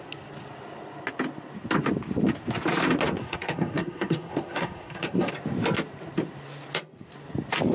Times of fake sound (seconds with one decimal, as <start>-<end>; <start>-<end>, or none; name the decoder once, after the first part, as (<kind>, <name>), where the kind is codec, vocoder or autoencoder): 3.2-5.3 (codec, SNAC)